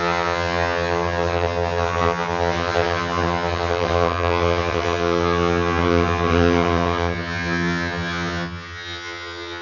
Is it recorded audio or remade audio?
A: remade